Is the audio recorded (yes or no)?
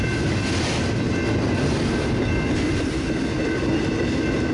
yes